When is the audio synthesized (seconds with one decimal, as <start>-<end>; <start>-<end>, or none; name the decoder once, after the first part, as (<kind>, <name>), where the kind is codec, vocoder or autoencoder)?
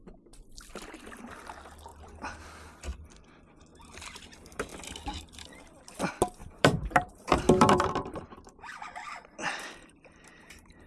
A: 1.9-2.4 (vocoder, BigVGAN v2); 6.4-10.9